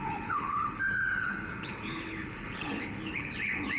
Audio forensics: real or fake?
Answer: fake